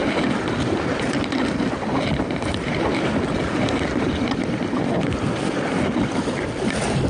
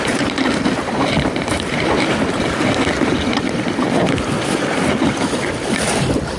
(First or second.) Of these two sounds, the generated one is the second